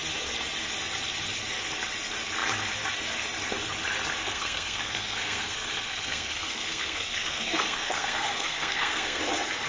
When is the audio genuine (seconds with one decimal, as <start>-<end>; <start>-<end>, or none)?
0.0-4.2; 9.2-9.7